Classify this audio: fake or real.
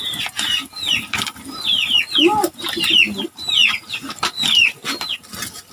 real